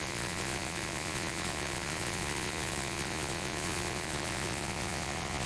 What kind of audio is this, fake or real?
fake